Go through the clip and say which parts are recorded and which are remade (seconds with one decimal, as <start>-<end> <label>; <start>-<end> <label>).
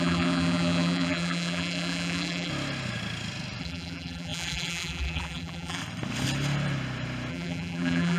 0.0-2.5 remade; 2.5-3.6 recorded; 3.6-5.8 remade; 5.8-7.3 recorded; 7.3-8.2 remade